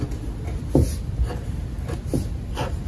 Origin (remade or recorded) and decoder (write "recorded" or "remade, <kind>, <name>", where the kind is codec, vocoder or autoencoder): recorded